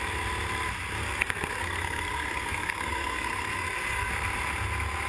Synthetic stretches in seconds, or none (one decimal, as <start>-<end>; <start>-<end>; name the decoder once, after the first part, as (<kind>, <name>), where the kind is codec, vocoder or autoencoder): 1.0-4.1 (codec, SNAC)